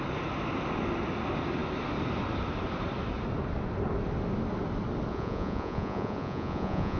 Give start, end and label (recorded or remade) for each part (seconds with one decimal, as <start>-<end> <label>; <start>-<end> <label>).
0.0-5.1 recorded; 5.1-7.0 remade